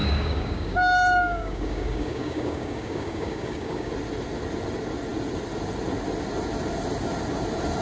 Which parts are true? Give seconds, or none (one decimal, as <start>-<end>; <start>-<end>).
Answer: 3.9-7.8